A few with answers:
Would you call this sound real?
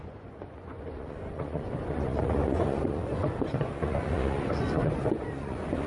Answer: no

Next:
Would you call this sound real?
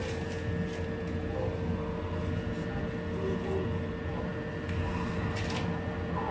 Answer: yes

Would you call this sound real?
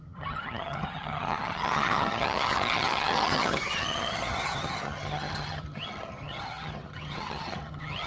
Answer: no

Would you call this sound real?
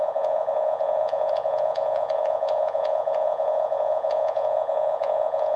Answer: no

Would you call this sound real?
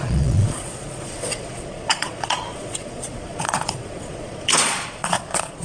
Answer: no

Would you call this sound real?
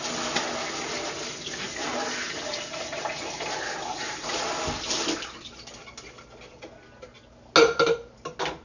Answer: yes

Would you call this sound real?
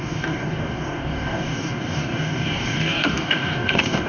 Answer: no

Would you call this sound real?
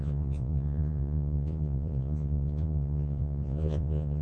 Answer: no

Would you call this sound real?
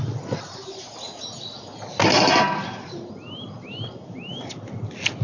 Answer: yes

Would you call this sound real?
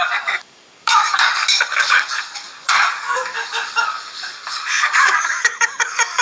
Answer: no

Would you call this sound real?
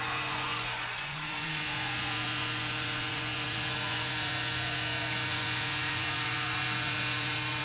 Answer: no